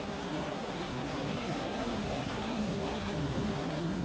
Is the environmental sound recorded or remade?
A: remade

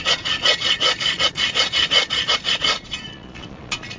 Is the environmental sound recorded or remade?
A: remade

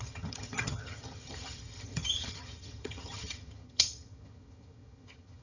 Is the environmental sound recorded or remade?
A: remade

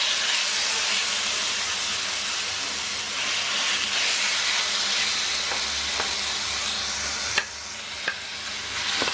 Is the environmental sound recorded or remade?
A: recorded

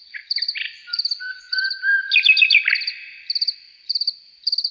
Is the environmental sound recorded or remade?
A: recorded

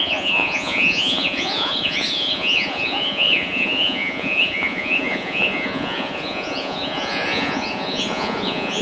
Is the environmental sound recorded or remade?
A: remade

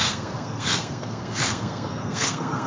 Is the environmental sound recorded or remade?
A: remade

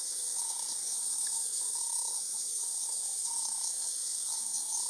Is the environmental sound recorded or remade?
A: remade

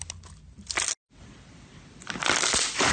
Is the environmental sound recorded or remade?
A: recorded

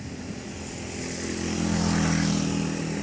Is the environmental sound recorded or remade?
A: recorded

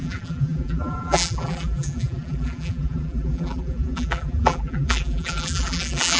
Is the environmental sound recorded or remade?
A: remade